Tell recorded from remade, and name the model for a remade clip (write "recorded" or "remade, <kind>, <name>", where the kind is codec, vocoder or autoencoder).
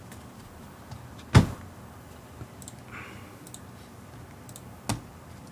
recorded